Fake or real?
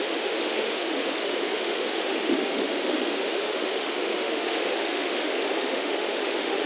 fake